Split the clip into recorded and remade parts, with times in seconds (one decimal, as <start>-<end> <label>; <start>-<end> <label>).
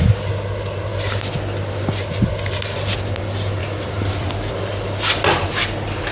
0.0-6.1 recorded